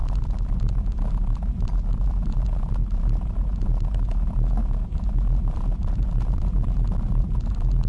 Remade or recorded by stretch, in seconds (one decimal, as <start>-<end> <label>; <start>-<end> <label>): 0.0-7.9 recorded

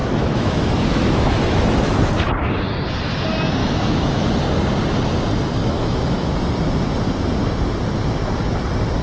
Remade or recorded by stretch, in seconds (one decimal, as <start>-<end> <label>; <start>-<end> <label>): 0.0-2.0 remade; 2.0-3.6 recorded; 3.6-4.3 remade; 4.3-5.6 recorded; 5.6-6.3 remade; 6.3-9.0 recorded

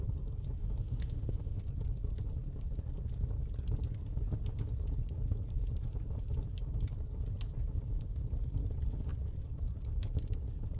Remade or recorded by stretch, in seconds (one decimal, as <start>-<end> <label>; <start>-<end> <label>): 0.0-0.6 recorded; 0.6-1.6 remade; 1.6-10.8 recorded

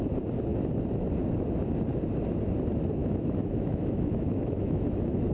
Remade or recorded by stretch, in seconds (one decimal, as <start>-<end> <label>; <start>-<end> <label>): 0.0-3.0 recorded; 3.0-5.3 remade